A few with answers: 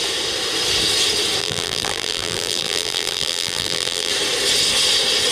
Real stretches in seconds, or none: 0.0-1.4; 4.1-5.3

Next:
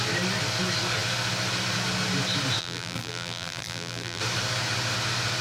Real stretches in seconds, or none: 0.0-2.6; 4.2-5.4

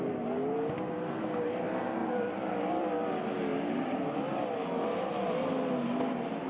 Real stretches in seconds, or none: 0.0-2.0; 2.9-6.5

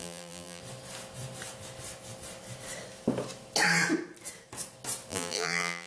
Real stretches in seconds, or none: 0.6-5.1

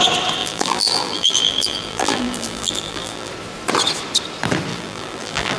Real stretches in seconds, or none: 0.0-0.4; 3.3-4.7